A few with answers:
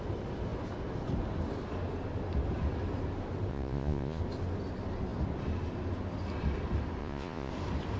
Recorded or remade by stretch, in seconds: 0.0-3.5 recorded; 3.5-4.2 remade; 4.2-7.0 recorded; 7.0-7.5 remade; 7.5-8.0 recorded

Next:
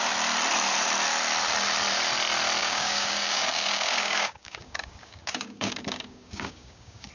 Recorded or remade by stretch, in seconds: 0.0-2.6 recorded; 2.6-7.1 remade

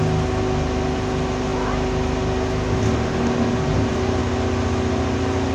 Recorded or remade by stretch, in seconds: 0.0-5.5 recorded

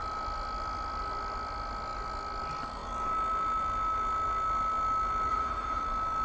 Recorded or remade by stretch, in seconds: 0.0-5.3 recorded; 5.3-5.8 remade; 5.8-6.2 recorded